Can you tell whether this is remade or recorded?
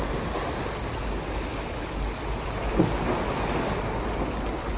recorded